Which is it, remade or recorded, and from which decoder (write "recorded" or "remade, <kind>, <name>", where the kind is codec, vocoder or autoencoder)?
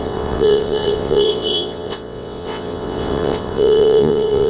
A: remade, vocoder, WaveNeXt